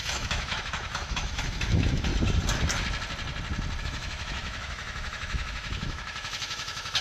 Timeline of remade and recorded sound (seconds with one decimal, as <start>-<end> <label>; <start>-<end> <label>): 0.0-2.1 remade; 2.1-3.8 recorded; 3.8-7.0 remade